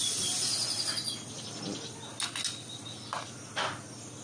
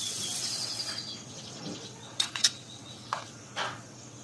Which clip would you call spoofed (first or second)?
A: second